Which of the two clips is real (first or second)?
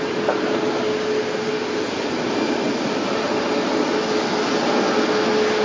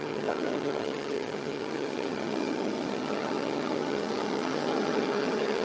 first